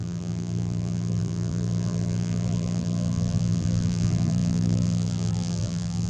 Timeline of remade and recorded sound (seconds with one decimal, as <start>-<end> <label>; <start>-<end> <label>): 0.0-6.1 remade